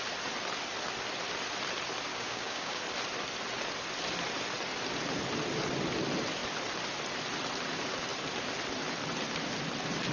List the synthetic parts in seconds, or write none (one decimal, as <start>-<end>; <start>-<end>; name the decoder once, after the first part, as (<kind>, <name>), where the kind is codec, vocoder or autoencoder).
2.1-2.8 (codec, DAC)